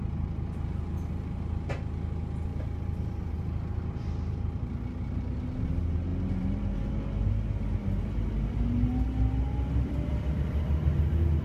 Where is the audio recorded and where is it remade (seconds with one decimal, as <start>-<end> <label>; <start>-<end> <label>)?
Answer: 0.0-6.1 recorded; 6.1-6.9 remade; 6.9-10.1 recorded; 10.1-10.6 remade; 10.6-11.4 recorded